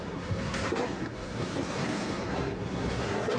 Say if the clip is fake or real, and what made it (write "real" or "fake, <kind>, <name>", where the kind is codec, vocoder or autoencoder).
fake, codec, SNAC